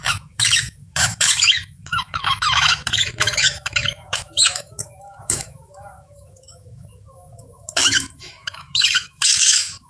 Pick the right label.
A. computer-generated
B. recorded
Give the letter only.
A